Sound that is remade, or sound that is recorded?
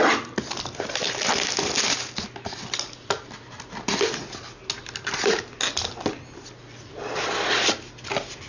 recorded